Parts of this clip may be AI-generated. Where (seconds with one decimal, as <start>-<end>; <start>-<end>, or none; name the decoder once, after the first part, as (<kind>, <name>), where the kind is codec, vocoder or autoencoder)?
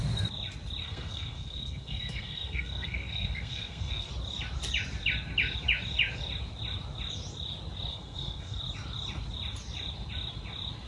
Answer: 0.8-4.1 (codec, SNAC); 7.9-8.6